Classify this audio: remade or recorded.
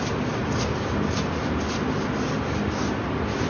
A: recorded